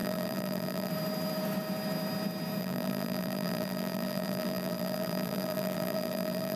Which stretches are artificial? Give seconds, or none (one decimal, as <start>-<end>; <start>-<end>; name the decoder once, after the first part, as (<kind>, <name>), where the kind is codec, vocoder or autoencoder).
0.0-0.9 (vocoder, BigVGAN v2); 2.6-6.6